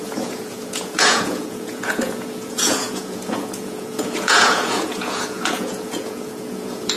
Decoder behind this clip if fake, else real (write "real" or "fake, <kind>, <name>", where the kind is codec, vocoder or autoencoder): fake, vocoder, Vocos